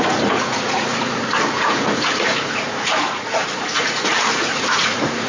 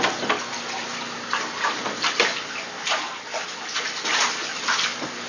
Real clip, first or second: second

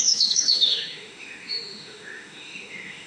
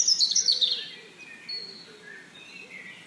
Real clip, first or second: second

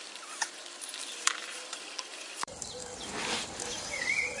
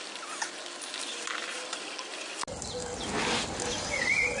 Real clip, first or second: second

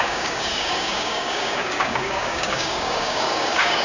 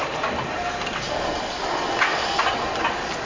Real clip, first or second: second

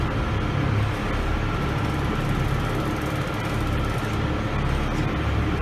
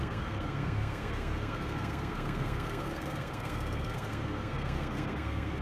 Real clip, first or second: first